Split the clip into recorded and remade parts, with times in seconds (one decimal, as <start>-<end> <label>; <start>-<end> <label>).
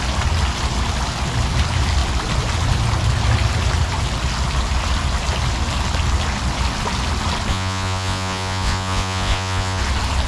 0.0-7.5 recorded; 7.5-9.8 remade; 9.8-10.3 recorded